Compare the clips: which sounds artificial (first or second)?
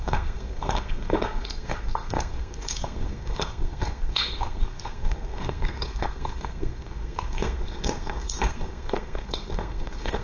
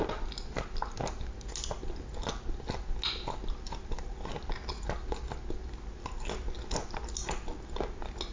first